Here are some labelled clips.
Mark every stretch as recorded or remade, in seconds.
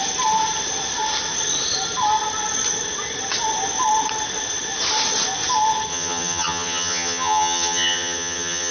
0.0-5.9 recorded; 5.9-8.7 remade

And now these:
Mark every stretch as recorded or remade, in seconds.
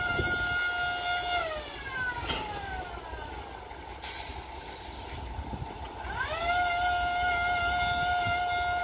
0.0-8.8 recorded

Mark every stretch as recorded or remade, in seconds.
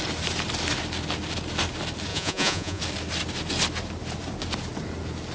0.0-2.1 recorded; 2.1-2.8 remade; 2.8-5.3 recorded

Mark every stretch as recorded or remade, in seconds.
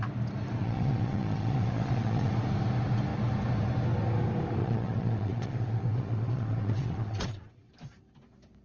0.0-0.6 recorded; 0.6-2.3 remade; 2.3-4.6 recorded; 4.6-7.7 remade; 7.7-8.6 recorded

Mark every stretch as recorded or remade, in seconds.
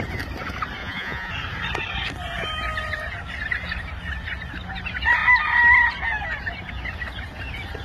0.0-0.8 recorded; 0.8-1.3 remade; 1.3-7.8 recorded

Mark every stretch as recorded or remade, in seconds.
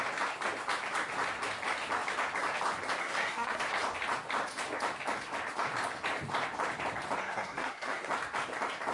0.0-3.0 recorded; 3.0-3.6 remade; 3.6-7.2 recorded; 7.2-8.1 remade; 8.1-8.9 recorded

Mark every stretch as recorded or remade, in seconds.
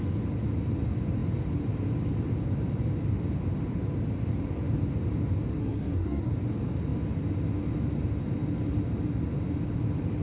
0.0-5.5 recorded; 5.5-6.3 remade; 6.3-10.2 recorded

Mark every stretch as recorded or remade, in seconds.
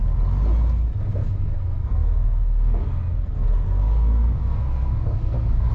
0.0-1.0 recorded; 1.0-5.7 remade